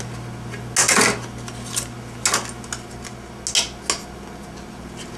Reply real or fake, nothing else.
real